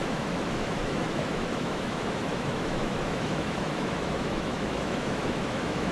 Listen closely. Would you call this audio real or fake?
fake